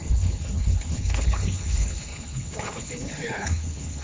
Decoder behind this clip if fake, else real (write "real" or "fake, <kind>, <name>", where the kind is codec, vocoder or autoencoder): fake, codec, HILCodec